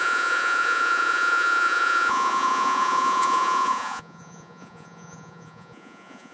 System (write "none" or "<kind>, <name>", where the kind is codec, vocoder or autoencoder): vocoder, Vocos